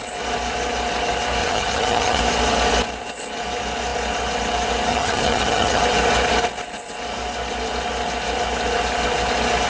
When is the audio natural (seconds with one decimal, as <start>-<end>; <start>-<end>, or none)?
0.0-1.4; 2.2-4.9; 5.8-9.7